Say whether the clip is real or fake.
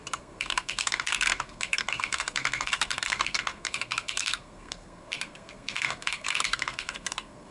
fake